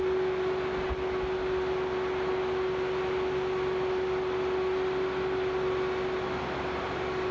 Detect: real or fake real